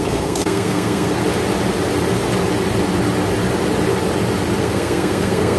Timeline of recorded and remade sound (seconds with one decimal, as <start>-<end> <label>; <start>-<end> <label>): 0.0-1.2 remade; 1.2-4.6 recorded; 4.6-5.6 remade